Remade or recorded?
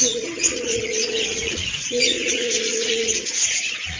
remade